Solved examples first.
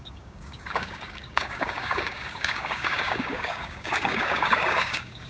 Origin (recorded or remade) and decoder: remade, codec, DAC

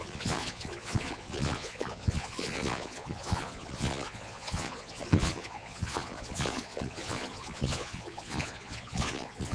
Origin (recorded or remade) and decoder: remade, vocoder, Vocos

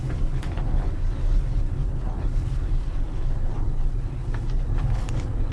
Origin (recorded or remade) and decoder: remade, codec, HILCodec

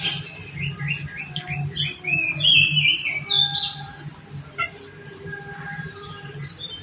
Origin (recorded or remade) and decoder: recorded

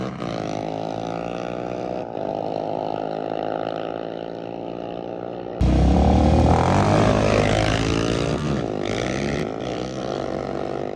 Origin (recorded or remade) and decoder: recorded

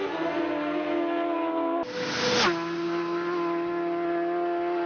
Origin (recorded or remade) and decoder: recorded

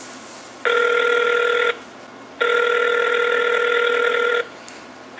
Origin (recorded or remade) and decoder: recorded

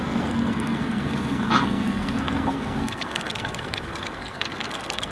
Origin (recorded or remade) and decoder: remade, codec, SNAC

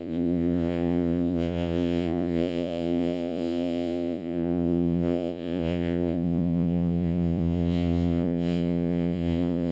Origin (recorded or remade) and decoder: remade, vocoder, Vocos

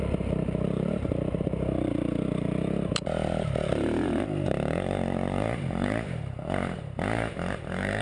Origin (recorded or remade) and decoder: remade, vocoder, BigVGAN v2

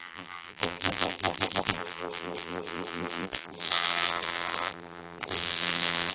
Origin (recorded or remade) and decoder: remade, vocoder, BigVGAN v2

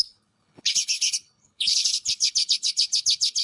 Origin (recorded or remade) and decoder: remade, codec, HILCodec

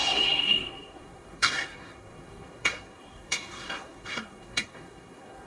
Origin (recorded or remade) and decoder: remade, codec, SNAC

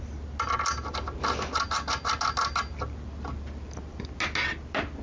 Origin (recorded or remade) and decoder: recorded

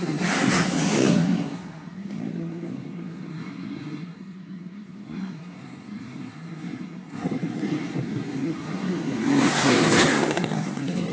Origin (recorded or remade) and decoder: remade, codec, SNAC